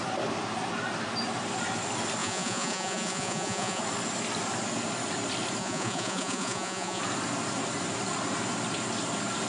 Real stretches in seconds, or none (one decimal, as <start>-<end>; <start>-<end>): 0.0-2.2; 3.8-5.6; 7.0-9.5